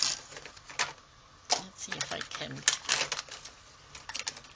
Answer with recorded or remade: recorded